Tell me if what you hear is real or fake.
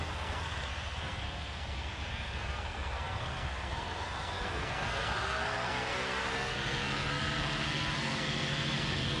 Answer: fake